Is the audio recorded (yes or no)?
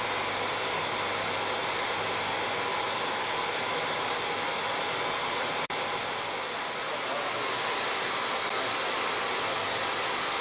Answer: yes